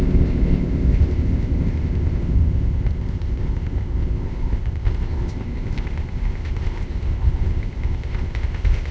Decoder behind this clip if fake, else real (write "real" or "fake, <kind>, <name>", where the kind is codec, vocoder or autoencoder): fake, codec, ZipCodec